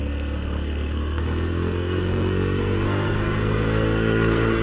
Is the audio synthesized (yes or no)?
yes